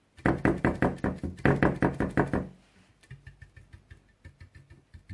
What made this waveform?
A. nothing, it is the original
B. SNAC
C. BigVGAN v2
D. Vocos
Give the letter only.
A